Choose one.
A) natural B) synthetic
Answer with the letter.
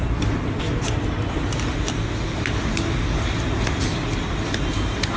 A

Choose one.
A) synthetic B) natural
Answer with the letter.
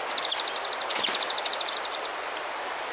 B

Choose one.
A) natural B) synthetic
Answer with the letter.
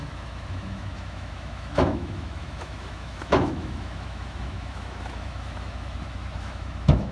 B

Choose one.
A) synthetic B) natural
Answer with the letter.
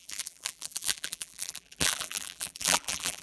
A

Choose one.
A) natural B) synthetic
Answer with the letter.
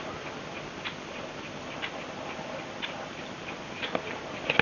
A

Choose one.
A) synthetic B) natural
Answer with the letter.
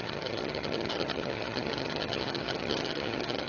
A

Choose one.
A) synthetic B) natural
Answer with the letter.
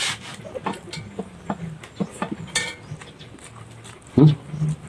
B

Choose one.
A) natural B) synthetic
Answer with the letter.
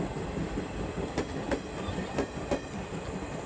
A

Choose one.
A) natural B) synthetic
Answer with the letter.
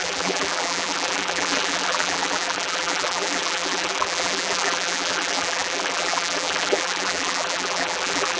B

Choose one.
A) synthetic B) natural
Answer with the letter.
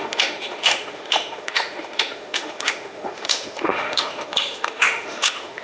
A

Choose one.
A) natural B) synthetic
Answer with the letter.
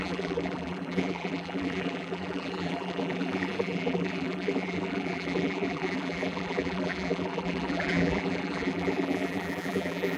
B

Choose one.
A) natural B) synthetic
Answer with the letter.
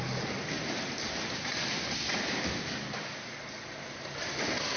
A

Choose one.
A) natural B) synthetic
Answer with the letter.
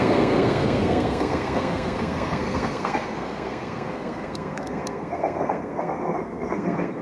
B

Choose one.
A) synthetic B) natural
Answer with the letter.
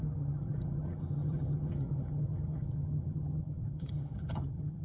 A